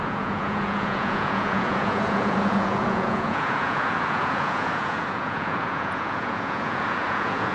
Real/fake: fake